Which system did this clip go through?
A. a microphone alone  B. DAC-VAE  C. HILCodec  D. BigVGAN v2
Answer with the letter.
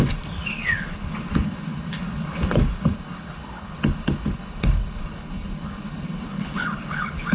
C